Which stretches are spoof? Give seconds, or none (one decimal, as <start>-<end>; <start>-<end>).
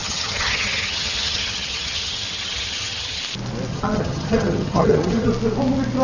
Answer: 0.0-3.2; 3.7-5.3